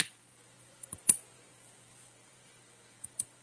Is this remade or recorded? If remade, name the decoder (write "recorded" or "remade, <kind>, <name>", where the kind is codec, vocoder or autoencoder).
remade, vocoder, Vocos